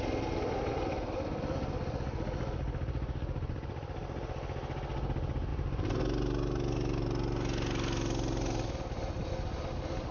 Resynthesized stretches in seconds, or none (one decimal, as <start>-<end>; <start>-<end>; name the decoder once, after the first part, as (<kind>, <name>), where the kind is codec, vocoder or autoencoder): 5.5-6.0 (vocoder, BigVGAN v2)